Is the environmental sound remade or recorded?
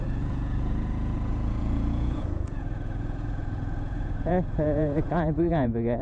remade